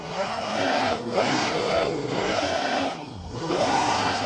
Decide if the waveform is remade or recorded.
remade